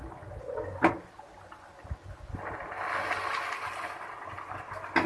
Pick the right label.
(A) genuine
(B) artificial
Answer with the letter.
A